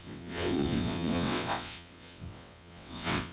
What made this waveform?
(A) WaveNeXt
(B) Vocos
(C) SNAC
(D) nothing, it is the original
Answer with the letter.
A